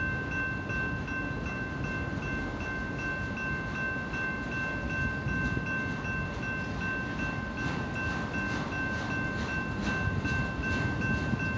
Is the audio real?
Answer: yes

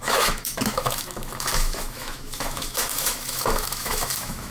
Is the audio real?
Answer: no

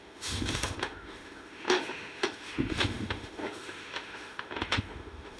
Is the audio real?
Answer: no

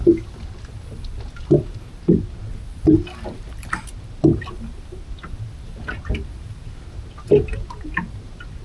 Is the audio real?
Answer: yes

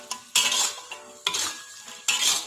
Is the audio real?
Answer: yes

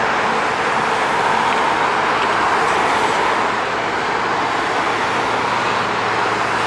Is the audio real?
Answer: yes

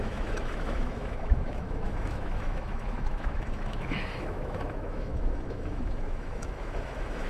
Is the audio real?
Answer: no